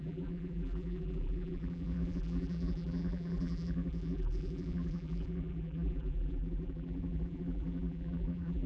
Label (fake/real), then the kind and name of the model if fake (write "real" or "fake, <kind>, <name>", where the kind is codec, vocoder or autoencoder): fake, vocoder, BigVGAN v2